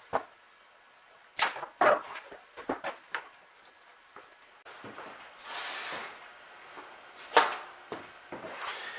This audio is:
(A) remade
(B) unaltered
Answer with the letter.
B